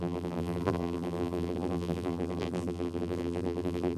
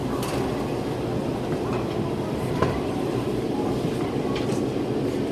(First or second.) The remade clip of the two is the first